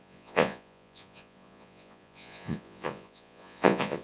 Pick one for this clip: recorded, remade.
remade